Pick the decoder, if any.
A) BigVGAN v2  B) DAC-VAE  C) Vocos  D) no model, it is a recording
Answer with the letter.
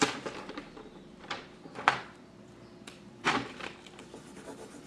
A